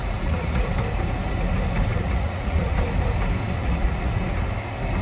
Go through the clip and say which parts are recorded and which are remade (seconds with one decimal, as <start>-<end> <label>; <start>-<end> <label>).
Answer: 0.0-0.7 remade; 0.7-1.9 recorded; 1.9-2.8 remade; 2.8-3.6 recorded; 3.6-4.2 remade; 4.2-5.0 recorded